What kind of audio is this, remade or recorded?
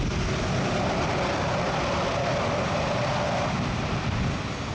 recorded